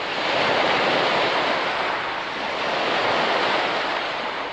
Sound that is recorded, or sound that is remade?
recorded